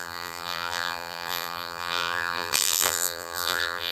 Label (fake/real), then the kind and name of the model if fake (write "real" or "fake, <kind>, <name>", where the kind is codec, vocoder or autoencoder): fake, vocoder, BigVGAN v2